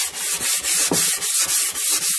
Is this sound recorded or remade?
recorded